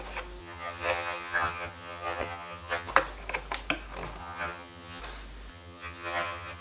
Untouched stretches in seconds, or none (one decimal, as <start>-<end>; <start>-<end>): 0.0-0.4; 2.9-4.2; 5.0-5.5